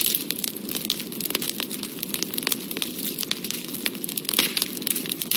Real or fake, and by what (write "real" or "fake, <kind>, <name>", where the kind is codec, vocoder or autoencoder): real